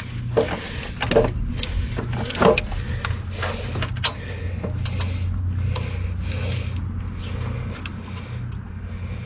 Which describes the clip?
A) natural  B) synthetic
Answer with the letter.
A